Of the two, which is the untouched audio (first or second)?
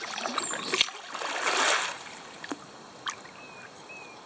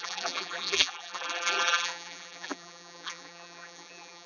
first